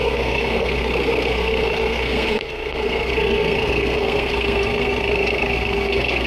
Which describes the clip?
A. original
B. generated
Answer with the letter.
B